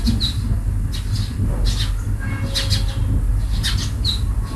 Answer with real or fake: real